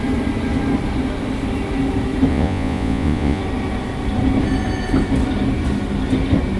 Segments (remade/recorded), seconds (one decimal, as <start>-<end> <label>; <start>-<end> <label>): 0.0-2.3 recorded; 2.3-3.4 remade; 3.4-6.6 recorded